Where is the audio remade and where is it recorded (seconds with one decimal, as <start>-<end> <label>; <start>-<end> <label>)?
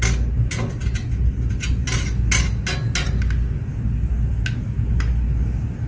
0.0-5.9 recorded